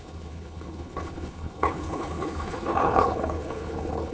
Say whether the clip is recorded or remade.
remade